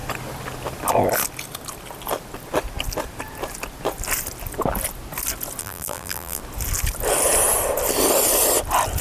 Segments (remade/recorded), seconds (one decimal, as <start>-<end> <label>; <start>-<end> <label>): 0.0-5.6 recorded; 5.6-6.4 remade; 6.4-9.0 recorded